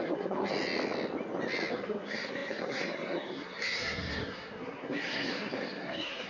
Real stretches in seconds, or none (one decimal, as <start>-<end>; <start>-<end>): 0.5-1.7